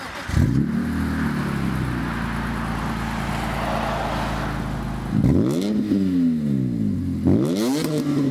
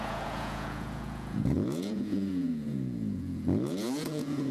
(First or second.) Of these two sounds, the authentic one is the first